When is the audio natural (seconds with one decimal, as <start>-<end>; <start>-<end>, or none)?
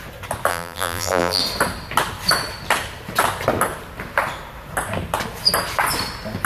0.0-0.5; 1.4-6.5